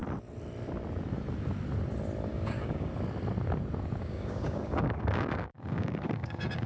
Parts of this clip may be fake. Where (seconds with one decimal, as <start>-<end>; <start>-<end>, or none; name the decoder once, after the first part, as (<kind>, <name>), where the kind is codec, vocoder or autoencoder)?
2.3-2.9 (codec, DAC); 4.0-6.7